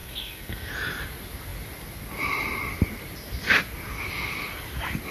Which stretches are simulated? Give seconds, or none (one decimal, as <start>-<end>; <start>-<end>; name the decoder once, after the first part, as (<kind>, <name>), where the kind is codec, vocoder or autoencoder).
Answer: 0.0-0.7 (codec, SNAC)